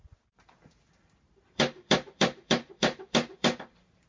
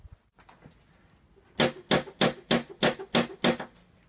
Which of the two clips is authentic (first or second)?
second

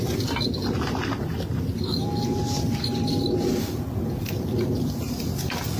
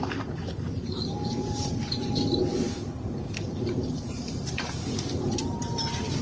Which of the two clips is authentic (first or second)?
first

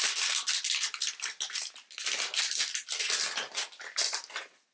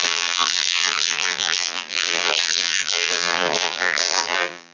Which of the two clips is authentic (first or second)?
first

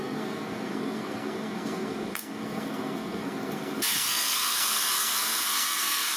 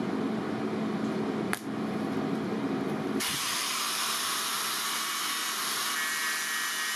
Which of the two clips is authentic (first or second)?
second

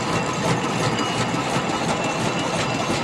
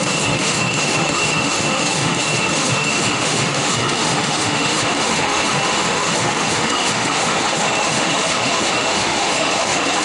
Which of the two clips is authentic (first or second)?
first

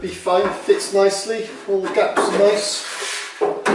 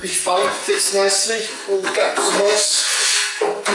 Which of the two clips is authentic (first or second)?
first